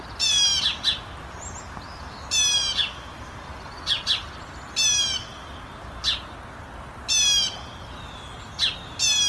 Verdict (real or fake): real